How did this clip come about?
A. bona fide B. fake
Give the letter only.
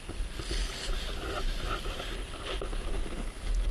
A